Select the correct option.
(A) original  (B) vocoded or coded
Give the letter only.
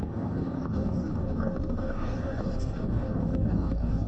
B